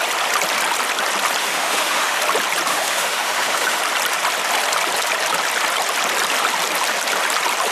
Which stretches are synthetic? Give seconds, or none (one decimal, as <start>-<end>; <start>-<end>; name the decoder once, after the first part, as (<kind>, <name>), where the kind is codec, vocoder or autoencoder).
1.4-2.2 (autoencoder, DAC-VAE); 2.7-3.8